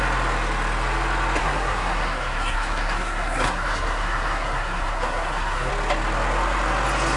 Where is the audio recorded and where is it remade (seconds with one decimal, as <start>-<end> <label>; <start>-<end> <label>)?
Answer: 0.0-1.4 recorded; 1.4-5.7 remade; 5.7-7.2 recorded